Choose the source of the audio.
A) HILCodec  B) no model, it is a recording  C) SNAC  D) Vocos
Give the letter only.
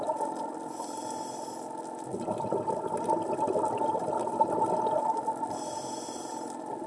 B